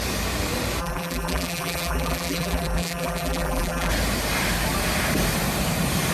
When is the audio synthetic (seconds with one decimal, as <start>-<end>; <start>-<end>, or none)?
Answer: 0.8-3.9